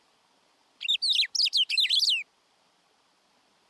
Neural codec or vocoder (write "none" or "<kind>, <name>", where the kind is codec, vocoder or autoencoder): none